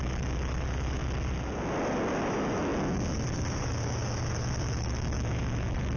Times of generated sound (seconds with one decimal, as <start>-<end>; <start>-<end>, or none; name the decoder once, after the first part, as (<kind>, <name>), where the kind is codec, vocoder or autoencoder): 0.0-1.0 (autoencoder, DAC-VAE); 2.2-6.0